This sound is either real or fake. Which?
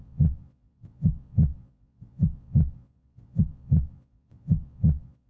fake